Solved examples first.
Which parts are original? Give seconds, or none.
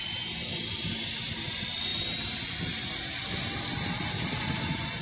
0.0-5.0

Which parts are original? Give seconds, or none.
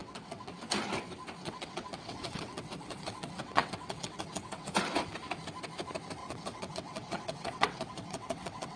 0.5-1.4; 4.7-6.2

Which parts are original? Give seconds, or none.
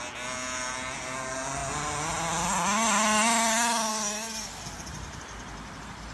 0.0-6.1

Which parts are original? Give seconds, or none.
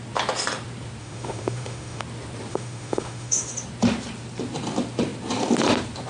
0.0-1.0; 2.0-2.5; 3.5-6.1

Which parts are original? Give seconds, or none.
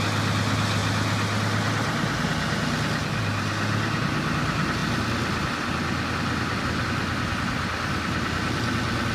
0.0-9.1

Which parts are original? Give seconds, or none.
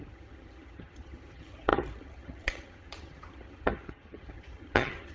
none